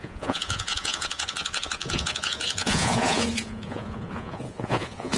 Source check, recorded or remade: remade